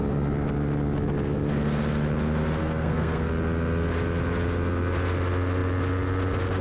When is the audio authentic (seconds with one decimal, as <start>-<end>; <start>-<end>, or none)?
0.0-2.6; 3.3-6.6